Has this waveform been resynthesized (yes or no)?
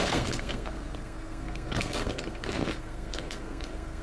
yes